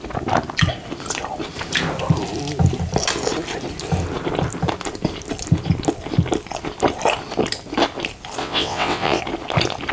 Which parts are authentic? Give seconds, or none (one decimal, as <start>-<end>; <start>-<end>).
0.0-8.4; 9.2-9.9